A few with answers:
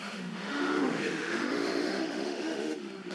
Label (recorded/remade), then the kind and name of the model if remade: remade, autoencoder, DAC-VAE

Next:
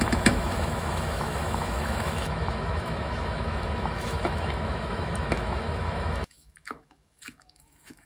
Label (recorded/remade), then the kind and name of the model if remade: remade, autoencoder, DAC-VAE